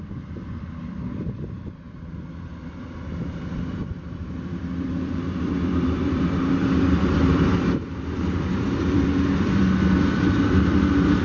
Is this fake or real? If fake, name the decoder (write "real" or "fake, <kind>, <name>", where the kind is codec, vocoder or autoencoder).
fake, vocoder, BigVGAN v2